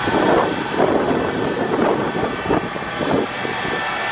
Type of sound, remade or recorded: recorded